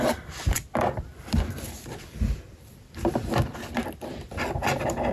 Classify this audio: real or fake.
fake